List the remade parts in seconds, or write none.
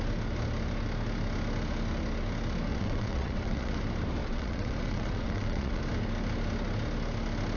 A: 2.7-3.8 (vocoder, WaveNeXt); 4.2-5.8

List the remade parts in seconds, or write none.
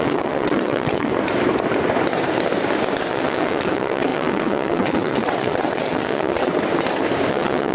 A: 0.0-1.1 (vocoder, WaveNeXt); 3.1-6.5; 7.3-7.7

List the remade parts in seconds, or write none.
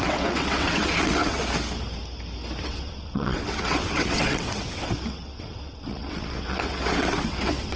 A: 0.0-1.4 (vocoder, WaveNeXt); 2.6-7.8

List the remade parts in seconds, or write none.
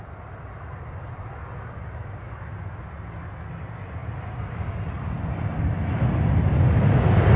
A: none